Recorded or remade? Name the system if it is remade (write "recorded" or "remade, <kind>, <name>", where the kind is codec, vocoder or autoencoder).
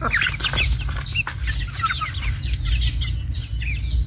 recorded